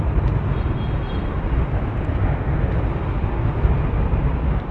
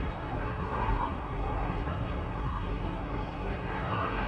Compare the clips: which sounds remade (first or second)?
second